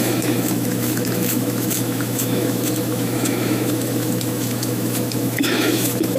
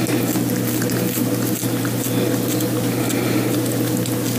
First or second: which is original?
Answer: second